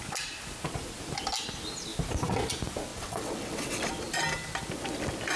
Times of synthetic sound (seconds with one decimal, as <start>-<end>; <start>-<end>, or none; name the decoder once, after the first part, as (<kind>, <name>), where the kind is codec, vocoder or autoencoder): 2.9-3.8 (vocoder, WaveNeXt)